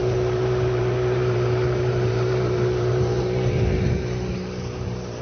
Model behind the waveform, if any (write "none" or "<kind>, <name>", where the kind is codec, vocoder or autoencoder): vocoder, BigVGAN v2